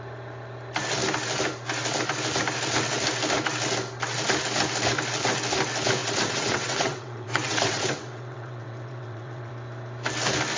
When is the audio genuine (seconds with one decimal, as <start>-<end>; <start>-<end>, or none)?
0.0-6.0; 9.5-10.6